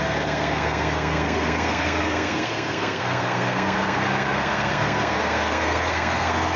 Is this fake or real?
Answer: fake